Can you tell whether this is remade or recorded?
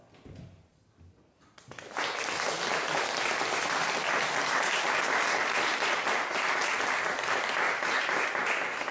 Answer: recorded